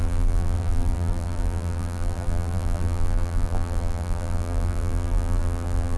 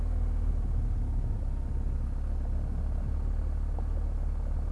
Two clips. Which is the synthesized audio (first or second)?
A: first